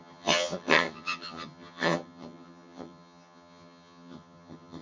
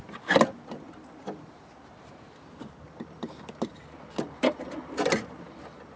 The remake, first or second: first